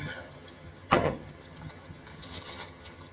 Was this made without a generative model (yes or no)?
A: no